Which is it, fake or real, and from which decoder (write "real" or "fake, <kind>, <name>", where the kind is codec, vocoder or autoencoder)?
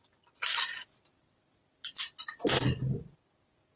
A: real